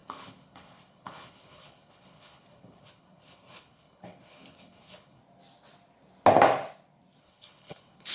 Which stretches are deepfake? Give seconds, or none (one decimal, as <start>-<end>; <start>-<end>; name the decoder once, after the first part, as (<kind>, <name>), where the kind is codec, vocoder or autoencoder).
0.0-5.2 (codec, HILCodec); 7.2-8.1